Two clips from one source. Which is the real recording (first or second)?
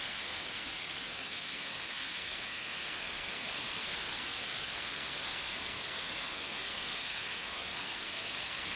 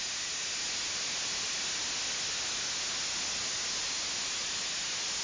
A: second